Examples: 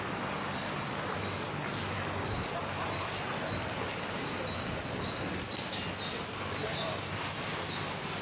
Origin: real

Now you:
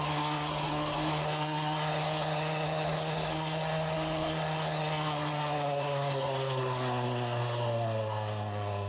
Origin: fake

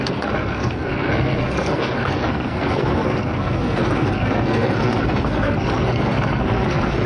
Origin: fake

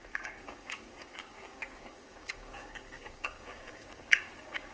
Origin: fake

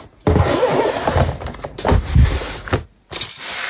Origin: real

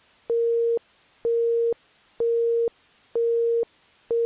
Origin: real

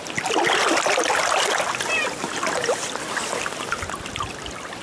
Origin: real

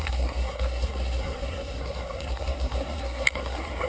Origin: fake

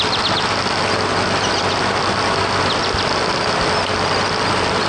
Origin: real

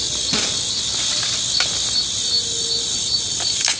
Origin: fake